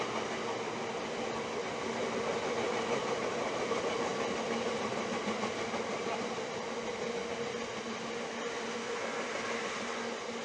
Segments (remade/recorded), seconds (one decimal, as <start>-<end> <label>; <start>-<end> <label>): 0.0-10.4 recorded